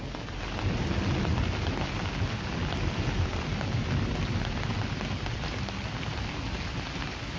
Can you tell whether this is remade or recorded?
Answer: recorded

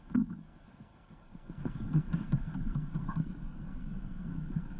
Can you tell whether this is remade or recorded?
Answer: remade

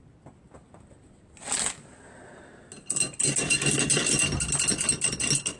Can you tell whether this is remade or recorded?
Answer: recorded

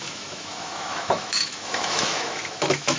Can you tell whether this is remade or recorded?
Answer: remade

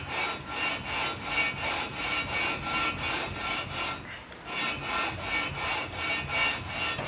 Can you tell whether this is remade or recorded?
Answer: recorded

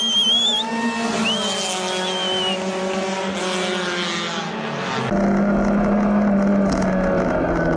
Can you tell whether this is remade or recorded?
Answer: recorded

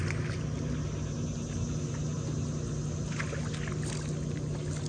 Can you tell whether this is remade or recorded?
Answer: recorded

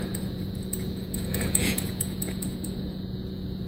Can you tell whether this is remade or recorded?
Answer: remade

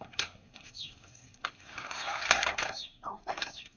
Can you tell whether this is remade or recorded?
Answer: remade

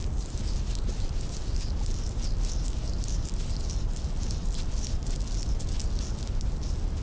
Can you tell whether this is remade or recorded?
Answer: recorded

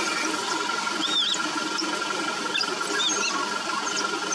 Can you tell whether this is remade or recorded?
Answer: recorded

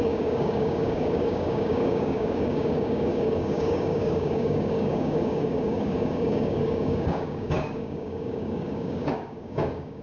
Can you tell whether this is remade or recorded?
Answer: remade